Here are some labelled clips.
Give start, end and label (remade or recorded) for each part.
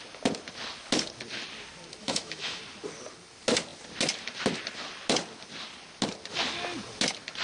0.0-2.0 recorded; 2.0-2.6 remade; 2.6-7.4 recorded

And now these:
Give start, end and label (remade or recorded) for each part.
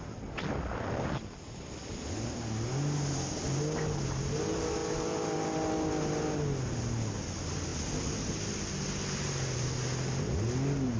0.0-11.0 recorded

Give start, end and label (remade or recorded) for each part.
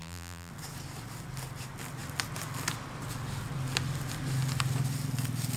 0.0-0.5 remade; 0.5-5.6 recorded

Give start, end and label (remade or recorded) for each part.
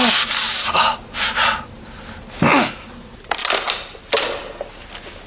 0.0-5.3 recorded